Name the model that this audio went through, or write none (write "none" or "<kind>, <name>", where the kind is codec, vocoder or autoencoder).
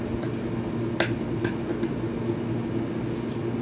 none